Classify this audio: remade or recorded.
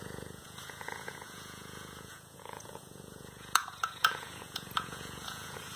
remade